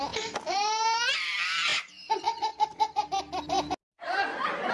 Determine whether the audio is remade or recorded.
recorded